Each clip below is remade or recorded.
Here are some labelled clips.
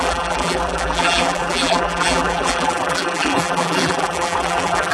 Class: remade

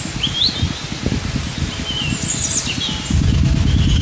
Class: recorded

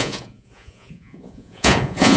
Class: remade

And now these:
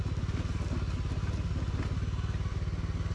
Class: recorded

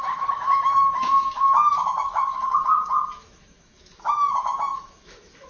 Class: remade